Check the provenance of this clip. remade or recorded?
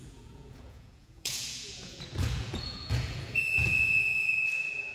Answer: remade